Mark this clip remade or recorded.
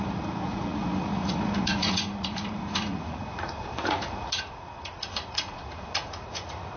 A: remade